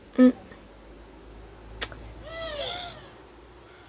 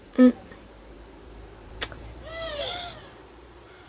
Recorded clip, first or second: first